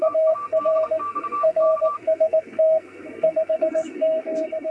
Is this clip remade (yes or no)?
yes